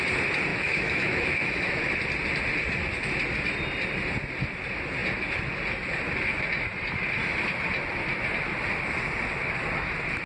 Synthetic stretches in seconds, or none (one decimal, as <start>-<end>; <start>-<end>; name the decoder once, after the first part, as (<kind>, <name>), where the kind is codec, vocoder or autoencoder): 0.5-1.9 (autoencoder, DAC-VAE)